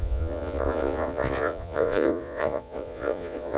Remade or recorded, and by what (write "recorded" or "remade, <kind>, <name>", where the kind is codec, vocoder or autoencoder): remade, vocoder, Vocos